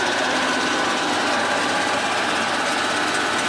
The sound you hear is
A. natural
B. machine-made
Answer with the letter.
A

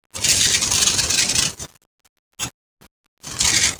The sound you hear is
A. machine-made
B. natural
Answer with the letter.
B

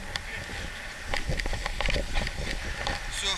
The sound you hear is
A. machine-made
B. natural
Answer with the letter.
B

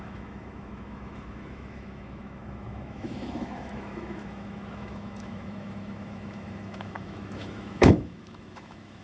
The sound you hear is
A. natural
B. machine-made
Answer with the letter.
B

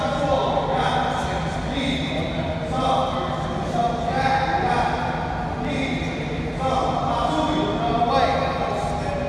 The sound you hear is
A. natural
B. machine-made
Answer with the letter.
A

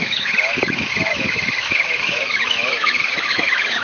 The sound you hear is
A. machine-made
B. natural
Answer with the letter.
A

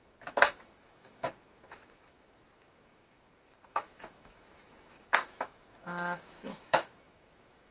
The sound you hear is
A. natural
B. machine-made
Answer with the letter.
B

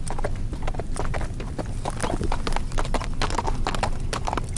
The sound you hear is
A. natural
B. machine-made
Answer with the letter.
A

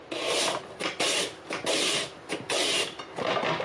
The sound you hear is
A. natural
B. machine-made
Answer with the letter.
A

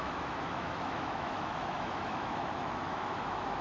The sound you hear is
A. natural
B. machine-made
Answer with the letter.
B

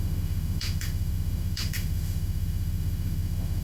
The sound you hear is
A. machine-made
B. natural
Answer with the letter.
A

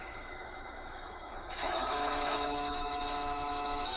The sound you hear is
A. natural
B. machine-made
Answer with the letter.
B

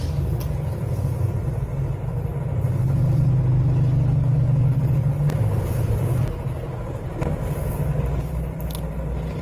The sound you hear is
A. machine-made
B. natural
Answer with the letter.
B